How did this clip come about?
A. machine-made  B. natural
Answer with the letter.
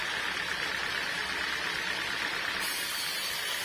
A